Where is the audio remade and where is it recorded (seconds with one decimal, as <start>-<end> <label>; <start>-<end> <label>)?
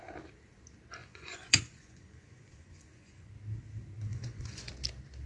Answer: 0.0-1.0 recorded; 1.0-3.3 remade; 3.3-4.1 recorded; 4.1-4.7 remade; 4.7-5.3 recorded